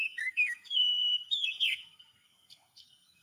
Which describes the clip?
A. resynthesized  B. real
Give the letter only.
A